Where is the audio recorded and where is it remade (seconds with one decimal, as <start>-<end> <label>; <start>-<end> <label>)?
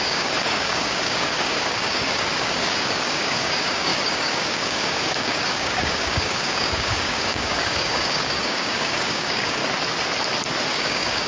0.0-9.6 remade; 9.6-10.7 recorded; 10.7-11.3 remade